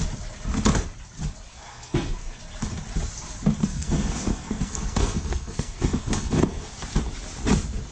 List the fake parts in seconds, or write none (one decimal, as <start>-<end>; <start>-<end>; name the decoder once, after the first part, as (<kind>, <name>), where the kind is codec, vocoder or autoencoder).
1.5-2.4 (codec, SNAC); 3.6-6.7

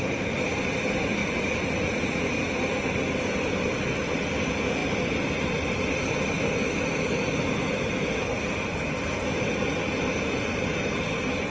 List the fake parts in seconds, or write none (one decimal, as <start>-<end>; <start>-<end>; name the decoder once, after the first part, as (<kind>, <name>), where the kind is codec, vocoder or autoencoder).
1.2-2.5 (vocoder, Vocos)

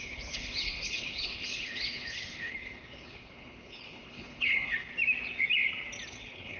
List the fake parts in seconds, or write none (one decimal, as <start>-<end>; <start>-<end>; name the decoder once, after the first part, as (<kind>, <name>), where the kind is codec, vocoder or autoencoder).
0.0-4.9 (codec, HILCodec); 6.1-6.6

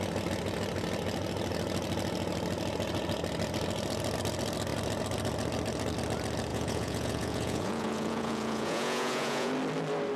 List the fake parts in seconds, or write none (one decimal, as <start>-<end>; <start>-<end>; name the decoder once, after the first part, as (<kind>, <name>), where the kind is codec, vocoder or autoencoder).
6.5-9.5 (vocoder, Vocos)